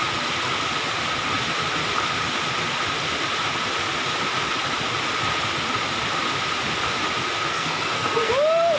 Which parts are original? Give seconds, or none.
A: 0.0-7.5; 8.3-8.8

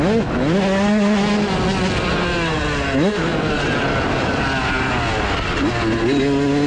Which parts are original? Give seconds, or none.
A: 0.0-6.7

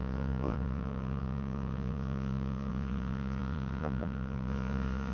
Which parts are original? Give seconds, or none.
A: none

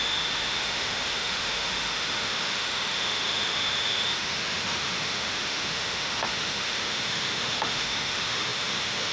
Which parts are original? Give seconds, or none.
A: none